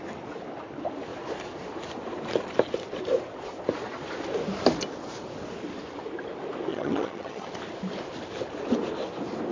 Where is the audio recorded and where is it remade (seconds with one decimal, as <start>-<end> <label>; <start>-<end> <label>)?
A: 0.0-6.7 recorded; 6.7-7.5 remade; 7.5-9.5 recorded